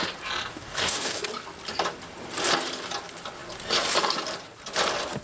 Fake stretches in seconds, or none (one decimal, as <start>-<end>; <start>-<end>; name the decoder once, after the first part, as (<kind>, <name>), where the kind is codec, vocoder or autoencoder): 0.5-1.2 (codec, DAC)